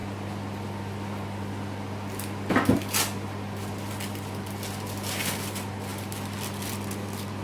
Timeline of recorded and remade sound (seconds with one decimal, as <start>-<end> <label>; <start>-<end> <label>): 0.0-7.4 recorded